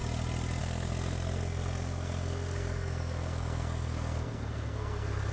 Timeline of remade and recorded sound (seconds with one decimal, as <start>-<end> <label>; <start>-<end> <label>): 0.0-0.6 recorded; 0.6-5.3 remade